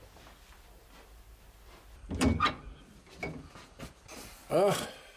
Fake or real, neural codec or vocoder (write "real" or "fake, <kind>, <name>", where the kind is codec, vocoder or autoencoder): real